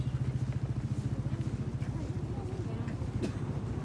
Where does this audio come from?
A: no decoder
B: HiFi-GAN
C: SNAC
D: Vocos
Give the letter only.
A